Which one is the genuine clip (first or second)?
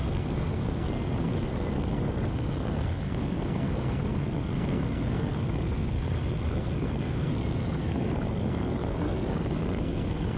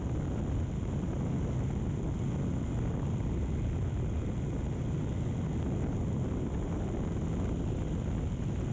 second